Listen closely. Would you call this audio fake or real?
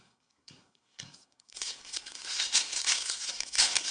fake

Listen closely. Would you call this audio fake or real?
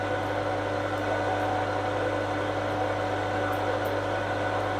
real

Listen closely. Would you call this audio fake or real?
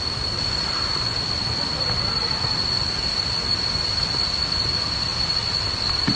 real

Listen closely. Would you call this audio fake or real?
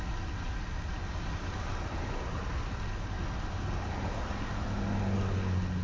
real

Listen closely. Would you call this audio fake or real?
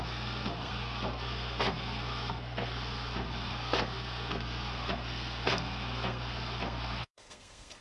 fake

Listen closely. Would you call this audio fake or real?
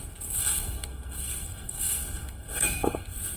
fake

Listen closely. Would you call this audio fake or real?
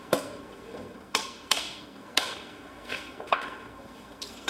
fake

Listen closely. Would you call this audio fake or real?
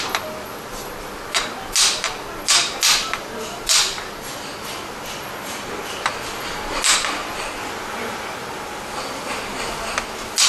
real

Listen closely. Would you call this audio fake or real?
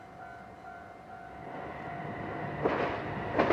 real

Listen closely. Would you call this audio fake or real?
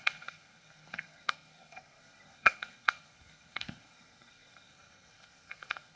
fake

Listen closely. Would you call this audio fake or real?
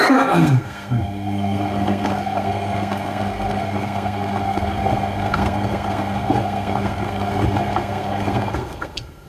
fake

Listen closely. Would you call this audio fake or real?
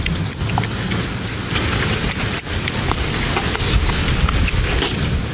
real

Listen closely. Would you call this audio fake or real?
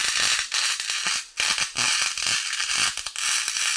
real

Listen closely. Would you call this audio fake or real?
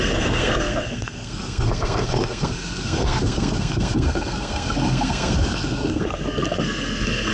fake